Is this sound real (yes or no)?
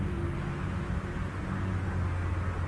yes